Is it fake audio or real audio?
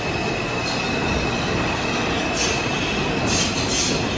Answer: real